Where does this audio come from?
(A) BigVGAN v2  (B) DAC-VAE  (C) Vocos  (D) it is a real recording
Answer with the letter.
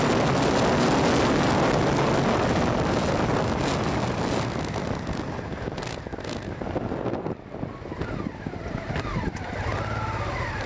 D